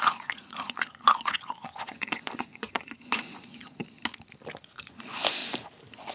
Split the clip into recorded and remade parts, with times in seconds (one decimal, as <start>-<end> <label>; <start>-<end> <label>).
0.0-3.8 remade; 3.8-4.6 recorded; 4.6-5.4 remade; 5.4-6.1 recorded